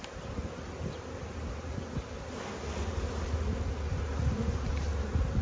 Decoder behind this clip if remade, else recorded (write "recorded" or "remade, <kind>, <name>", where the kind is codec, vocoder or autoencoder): recorded